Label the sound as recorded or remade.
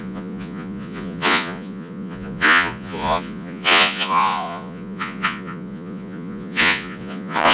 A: remade